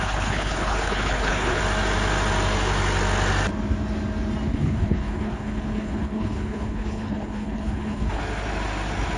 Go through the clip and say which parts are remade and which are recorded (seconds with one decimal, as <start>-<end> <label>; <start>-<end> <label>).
0.0-1.6 remade; 1.6-4.5 recorded; 4.5-8.2 remade; 8.2-9.2 recorded